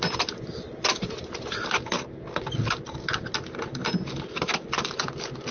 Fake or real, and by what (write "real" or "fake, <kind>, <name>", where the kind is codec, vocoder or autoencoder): real